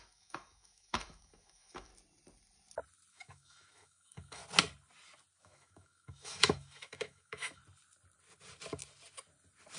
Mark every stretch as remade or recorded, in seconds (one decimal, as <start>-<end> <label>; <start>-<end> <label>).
0.0-1.9 remade; 1.9-3.1 recorded; 3.1-4.4 remade; 4.4-5.4 recorded; 5.4-7.6 remade; 7.6-9.8 recorded